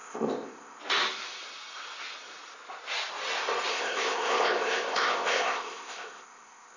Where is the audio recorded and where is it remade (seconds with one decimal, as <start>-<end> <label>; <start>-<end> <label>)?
0.0-0.8 remade; 0.8-3.7 recorded; 3.7-6.8 remade